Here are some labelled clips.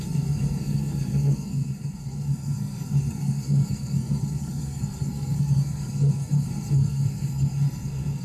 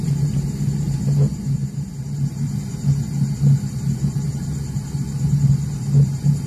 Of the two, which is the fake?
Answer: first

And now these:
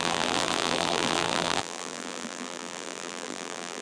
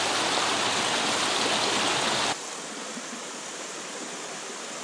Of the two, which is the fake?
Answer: first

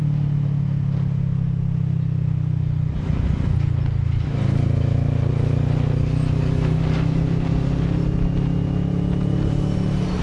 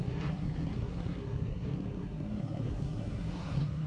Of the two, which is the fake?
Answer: second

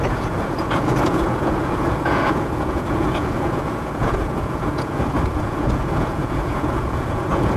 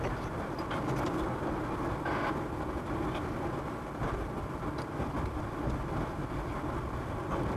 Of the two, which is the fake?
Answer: first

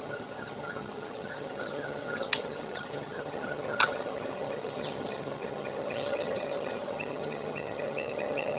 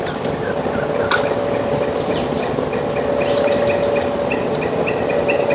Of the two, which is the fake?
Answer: first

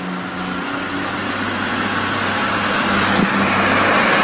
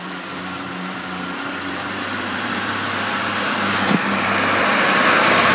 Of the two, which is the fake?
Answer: second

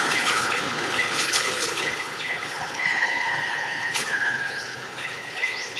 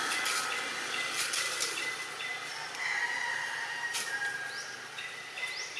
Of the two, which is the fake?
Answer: first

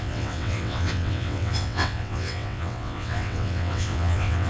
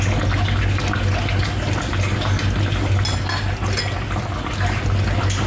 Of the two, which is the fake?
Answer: first